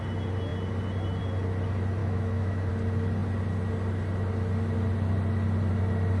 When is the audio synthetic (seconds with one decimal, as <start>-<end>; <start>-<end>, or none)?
2.0-2.7